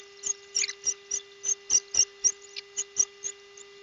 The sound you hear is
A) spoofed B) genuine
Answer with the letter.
B